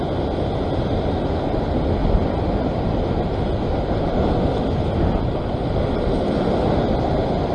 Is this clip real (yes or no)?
yes